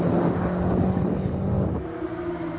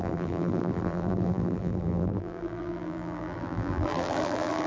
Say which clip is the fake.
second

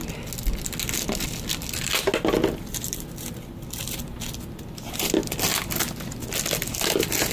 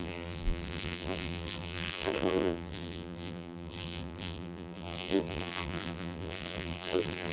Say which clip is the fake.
second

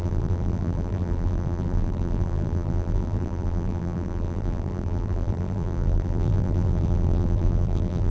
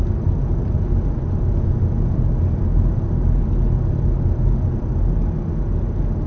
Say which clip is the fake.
first